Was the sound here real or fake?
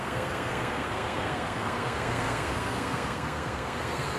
fake